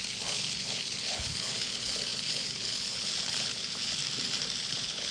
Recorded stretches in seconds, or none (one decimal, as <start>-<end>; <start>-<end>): 4.0-4.6